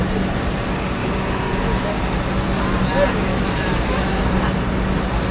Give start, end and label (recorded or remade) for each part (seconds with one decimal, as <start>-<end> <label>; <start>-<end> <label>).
0.0-3.3 recorded; 3.3-4.3 remade; 4.3-5.3 recorded